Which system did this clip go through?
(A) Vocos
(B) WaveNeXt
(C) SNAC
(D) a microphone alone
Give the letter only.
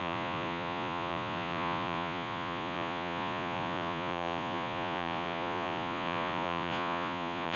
A